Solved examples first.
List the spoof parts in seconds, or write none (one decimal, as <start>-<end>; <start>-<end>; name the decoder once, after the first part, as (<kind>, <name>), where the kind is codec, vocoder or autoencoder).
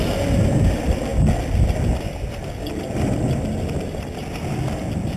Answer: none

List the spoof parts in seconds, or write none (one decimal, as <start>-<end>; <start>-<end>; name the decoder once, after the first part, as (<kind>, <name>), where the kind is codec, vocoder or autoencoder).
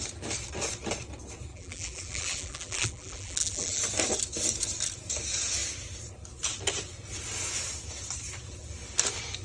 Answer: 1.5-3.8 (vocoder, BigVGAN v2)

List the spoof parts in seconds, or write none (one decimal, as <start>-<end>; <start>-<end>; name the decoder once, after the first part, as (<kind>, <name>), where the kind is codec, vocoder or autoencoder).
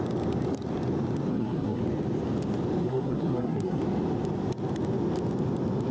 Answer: 1.3-1.8 (codec, SNAC); 2.8-3.8